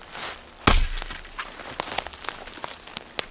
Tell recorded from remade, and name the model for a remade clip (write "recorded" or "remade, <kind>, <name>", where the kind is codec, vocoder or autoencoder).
recorded